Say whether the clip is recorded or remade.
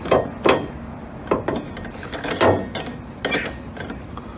recorded